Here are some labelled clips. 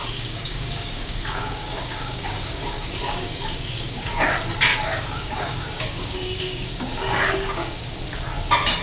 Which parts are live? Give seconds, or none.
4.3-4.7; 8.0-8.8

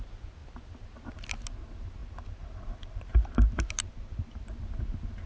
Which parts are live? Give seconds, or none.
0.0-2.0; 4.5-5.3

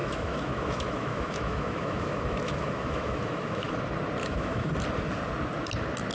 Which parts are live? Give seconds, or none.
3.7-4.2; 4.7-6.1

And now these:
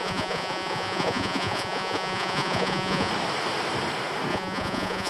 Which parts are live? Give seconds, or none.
3.1-4.3